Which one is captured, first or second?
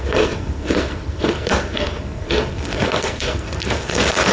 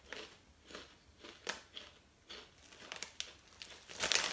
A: second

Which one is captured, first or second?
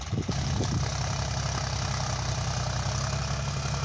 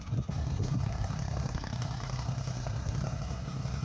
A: first